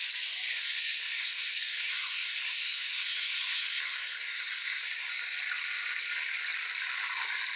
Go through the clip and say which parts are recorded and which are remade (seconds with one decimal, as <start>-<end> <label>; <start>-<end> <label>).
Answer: 0.0-0.5 recorded; 0.5-5.1 remade; 5.1-7.6 recorded